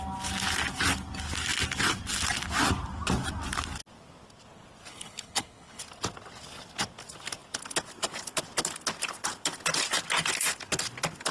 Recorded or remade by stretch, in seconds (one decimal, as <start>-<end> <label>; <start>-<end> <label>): 0.0-4.9 recorded; 4.9-5.8 remade; 5.8-11.3 recorded